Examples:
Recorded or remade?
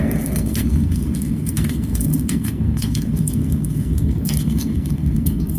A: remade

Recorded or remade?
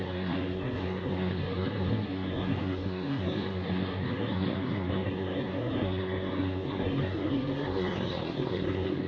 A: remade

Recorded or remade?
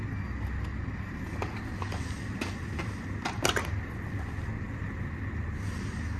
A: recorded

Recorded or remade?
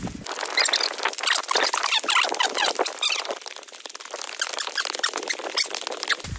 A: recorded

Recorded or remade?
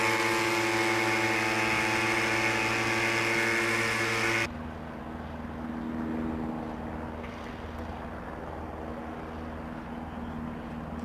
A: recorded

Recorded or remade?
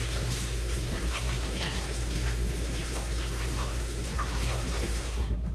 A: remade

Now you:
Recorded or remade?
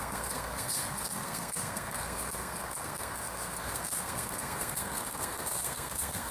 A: remade